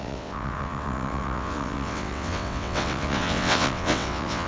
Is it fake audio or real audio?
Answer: fake